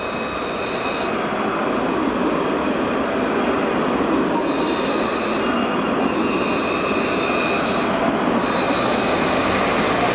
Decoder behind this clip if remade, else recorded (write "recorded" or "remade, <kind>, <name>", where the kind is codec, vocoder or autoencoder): recorded